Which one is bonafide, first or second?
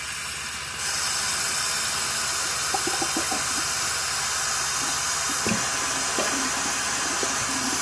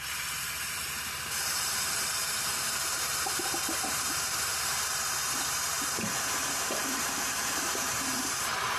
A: first